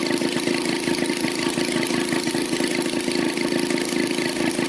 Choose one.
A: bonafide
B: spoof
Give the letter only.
A